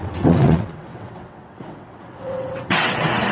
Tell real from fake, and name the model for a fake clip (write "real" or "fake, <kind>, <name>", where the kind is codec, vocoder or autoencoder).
fake, vocoder, WaveNeXt